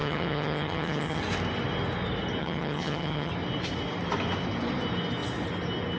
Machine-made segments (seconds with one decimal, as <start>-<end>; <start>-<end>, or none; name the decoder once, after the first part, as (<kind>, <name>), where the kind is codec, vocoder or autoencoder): 0.0-1.2 (vocoder, HiFi-GAN); 2.4-3.3